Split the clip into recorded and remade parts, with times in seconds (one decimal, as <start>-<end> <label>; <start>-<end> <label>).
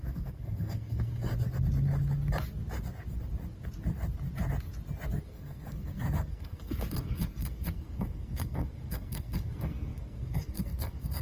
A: 0.0-1.3 remade; 1.3-5.2 recorded; 5.2-11.2 remade